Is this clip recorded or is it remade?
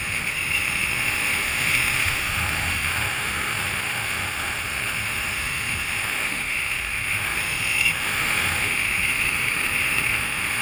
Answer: remade